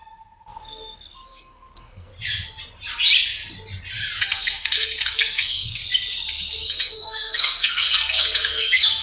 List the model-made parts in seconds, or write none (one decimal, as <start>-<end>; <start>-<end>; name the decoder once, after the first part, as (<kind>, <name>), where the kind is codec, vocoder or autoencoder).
0.0-2.1 (codec, SNAC); 4.2-5.8; 6.6-9.0